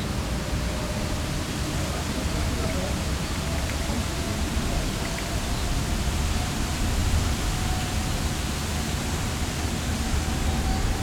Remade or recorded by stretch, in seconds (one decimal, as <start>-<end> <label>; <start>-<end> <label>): 0.0-7.0 recorded; 7.0-8.2 remade; 8.2-11.0 recorded